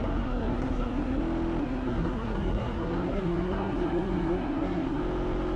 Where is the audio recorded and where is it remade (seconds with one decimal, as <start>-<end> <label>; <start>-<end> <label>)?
0.0-1.2 remade; 1.2-1.6 recorded; 1.6-5.0 remade; 5.0-5.6 recorded